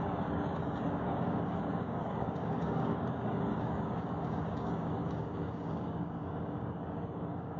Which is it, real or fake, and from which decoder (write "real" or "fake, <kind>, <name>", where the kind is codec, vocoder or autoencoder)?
fake, codec, DAC